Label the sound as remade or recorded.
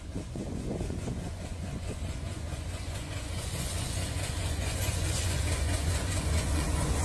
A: remade